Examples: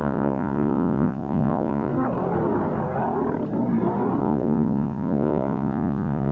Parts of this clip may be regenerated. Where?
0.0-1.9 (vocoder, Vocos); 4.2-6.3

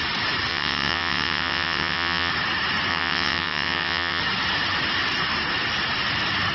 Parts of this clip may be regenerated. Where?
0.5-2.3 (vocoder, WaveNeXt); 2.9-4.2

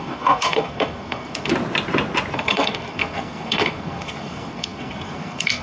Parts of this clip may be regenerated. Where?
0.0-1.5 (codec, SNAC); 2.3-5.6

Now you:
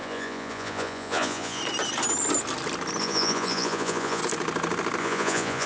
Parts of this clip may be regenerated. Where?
0.0-1.6 (vocoder, Vocos); 3.0-4.2; 5.0-5.7

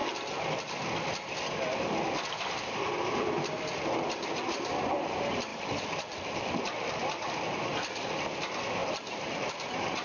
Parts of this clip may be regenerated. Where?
5.5-6.6 (vocoder, BigVGAN v2); 8.8-9.5

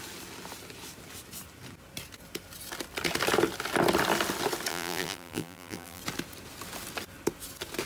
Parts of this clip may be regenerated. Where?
4.7-6.0 (vocoder, BigVGAN v2)